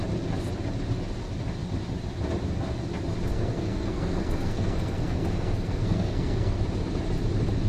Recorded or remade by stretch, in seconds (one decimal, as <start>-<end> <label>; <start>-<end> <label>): 0.0-3.3 recorded; 3.3-6.6 remade; 6.6-7.7 recorded